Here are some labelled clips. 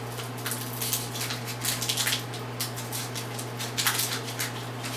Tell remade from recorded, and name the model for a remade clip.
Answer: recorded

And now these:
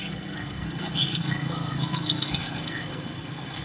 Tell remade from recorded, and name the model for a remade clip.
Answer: remade, codec, SNAC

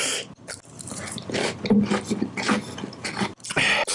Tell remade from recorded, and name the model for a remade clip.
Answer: recorded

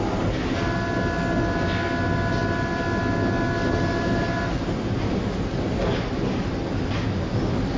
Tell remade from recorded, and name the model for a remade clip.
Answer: recorded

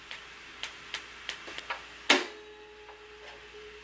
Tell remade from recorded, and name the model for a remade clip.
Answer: recorded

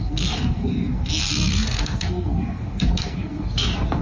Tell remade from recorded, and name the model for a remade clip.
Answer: remade, codec, SNAC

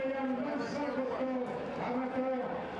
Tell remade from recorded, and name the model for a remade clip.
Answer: recorded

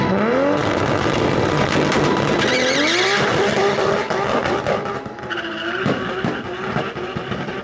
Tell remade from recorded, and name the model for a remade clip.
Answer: recorded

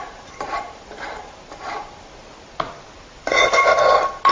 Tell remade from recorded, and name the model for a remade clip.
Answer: recorded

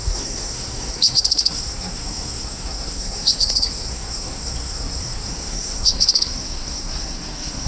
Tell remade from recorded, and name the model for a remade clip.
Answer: remade, codec, SNAC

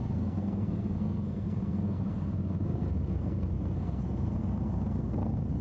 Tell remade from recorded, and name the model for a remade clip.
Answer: remade, codec, SNAC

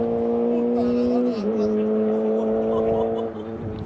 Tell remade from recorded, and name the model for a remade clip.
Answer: recorded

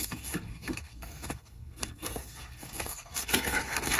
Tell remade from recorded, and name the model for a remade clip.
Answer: remade, codec, SNAC